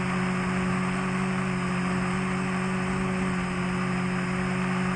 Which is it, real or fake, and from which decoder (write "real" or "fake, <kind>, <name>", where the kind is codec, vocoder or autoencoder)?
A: real